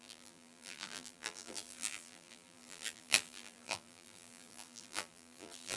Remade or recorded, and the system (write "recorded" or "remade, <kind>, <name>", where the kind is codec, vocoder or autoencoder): remade, vocoder, BigVGAN v2